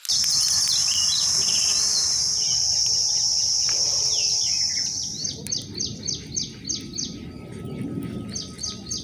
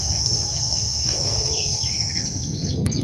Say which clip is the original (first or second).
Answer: first